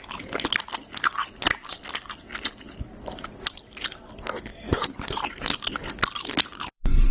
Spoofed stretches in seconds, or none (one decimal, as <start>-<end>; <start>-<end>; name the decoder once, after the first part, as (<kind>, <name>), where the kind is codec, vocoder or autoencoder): 1.2-1.8 (vocoder, BigVGAN v2); 4.5-7.1